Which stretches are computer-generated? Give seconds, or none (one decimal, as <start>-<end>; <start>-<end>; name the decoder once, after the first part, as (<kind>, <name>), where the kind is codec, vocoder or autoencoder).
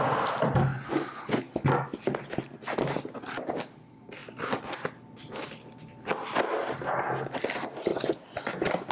0.7-1.4 (vocoder, Vocos); 7.9-8.5